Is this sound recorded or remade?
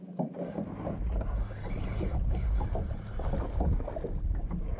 recorded